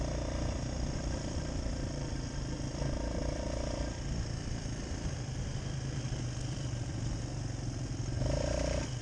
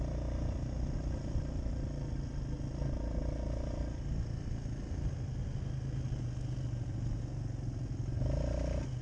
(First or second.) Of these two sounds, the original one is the second